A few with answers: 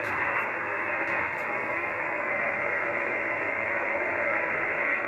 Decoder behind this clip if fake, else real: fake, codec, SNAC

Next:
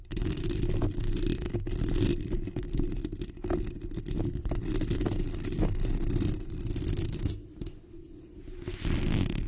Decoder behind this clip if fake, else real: real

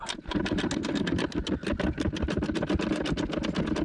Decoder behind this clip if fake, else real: real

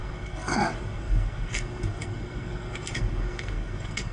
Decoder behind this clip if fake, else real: fake, codec, SNAC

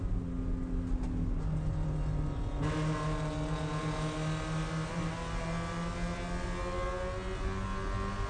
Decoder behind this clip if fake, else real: real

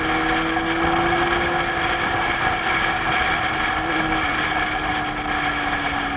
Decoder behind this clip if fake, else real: real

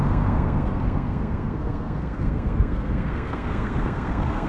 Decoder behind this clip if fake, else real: fake, codec, SNAC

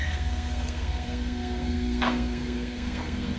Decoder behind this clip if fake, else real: fake, codec, SNAC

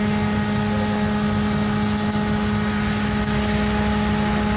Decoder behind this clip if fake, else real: real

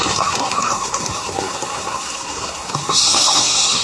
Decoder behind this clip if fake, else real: fake, codec, SNAC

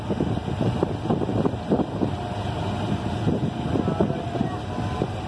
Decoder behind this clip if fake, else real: real